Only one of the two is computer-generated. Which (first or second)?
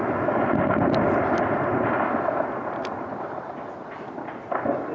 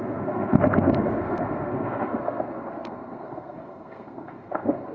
second